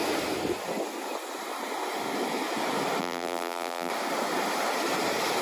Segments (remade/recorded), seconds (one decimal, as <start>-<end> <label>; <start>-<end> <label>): 0.0-3.0 recorded; 3.0-3.9 remade; 3.9-5.4 recorded